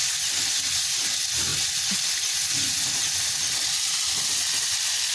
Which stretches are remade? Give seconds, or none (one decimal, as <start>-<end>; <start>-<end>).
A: none